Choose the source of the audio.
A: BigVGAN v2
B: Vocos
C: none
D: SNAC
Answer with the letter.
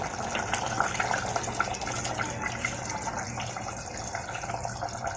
C